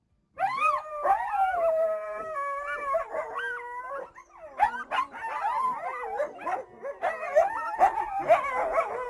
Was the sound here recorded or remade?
recorded